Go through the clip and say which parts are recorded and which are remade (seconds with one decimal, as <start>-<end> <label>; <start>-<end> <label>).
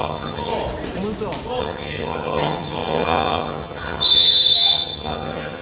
0.0-0.5 remade; 0.5-1.6 recorded; 1.6-5.6 remade